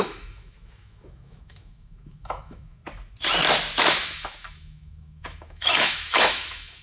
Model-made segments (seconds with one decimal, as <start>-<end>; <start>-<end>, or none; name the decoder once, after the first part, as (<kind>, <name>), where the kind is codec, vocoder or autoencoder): 0.0-2.8 (autoencoder, DAC-VAE); 3.8-6.8